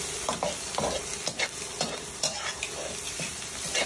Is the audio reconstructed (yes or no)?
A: no